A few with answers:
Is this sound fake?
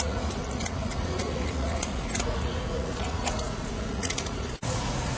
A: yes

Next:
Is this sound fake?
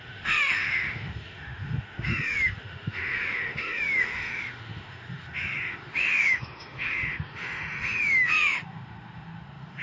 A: yes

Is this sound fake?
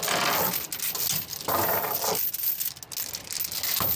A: no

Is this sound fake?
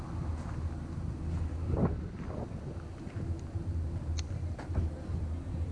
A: no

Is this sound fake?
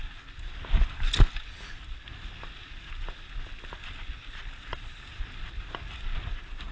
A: no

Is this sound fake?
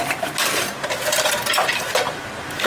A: yes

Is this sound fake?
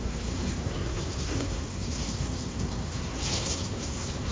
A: yes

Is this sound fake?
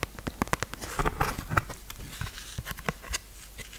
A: no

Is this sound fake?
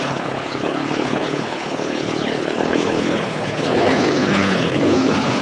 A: yes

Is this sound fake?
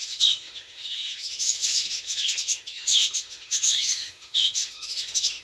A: yes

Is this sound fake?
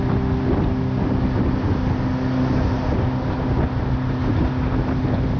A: no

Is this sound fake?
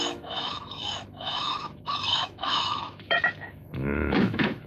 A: yes